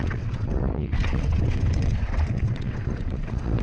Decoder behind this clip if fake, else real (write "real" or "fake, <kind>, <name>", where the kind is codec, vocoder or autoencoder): fake, vocoder, WaveNeXt